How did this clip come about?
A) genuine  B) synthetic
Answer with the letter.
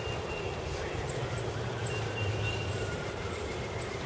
A